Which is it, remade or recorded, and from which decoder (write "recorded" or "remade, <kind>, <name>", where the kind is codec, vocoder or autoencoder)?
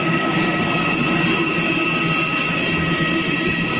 recorded